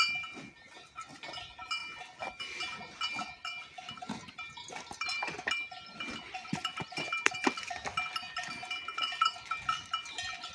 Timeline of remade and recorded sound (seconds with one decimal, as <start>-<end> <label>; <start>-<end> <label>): 0.0-10.5 recorded